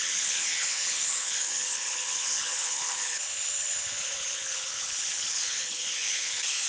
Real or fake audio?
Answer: fake